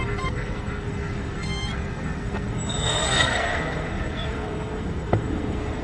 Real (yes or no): no